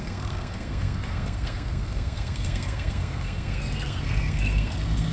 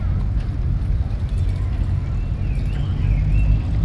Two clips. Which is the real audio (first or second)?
second